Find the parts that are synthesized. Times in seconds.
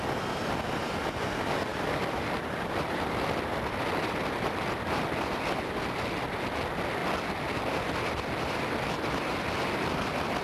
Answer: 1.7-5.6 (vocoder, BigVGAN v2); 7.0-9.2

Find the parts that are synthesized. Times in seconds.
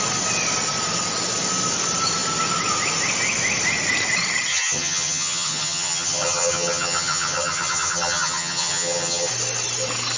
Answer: 4.5-9.3 (vocoder, HiFi-GAN)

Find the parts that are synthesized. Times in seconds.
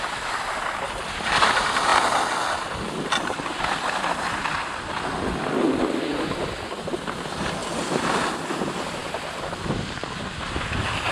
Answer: 7.6-8.3 (vocoder, BigVGAN v2); 9.0-9.6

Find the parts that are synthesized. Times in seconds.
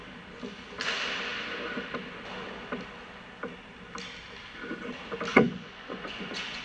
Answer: 5.3-6.6 (vocoder, Vocos)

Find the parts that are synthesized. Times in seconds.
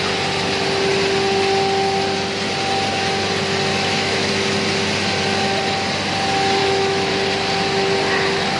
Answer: 3.7-4.3 (autoencoder, DAC-VAE); 6.6-7.1